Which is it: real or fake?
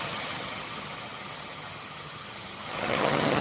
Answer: fake